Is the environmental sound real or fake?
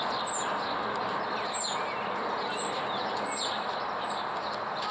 real